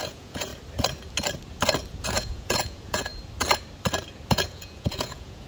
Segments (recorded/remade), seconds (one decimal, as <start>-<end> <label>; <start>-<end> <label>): 0.0-0.5 remade; 0.5-2.0 recorded; 2.0-3.1 remade; 3.1-4.3 recorded; 4.3-5.5 remade